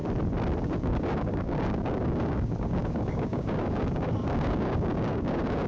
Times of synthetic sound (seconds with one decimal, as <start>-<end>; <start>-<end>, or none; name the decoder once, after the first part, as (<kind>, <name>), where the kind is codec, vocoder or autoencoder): 0.6-5.7 (codec, DAC)